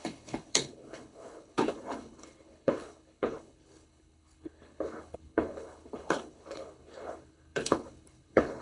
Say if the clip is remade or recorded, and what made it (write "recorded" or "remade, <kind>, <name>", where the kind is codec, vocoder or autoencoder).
remade, codec, HILCodec